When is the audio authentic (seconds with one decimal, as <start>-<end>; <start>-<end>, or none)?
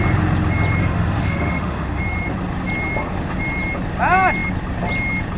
0.0-0.8; 2.0-5.4